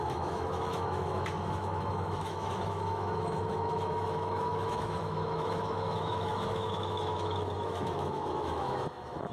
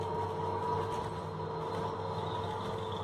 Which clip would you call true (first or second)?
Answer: second